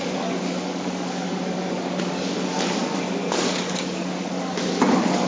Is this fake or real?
fake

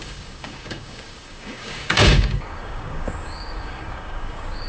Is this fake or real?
fake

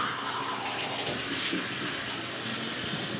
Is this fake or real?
real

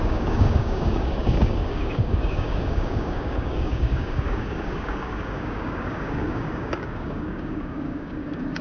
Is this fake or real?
fake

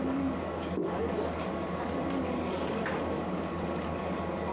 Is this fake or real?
fake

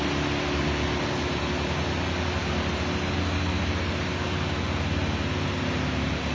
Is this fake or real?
real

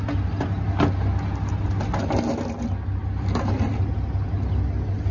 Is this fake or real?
real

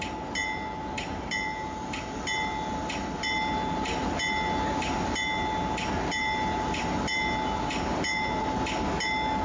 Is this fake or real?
real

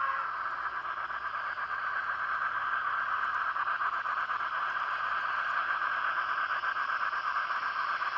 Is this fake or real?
real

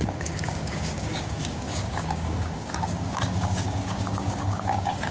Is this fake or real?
fake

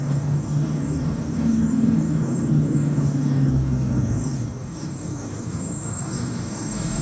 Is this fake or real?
fake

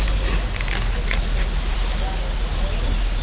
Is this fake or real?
real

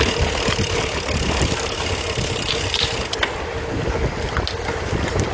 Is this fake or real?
real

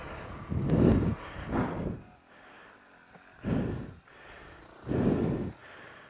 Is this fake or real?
real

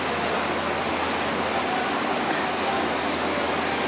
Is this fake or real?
real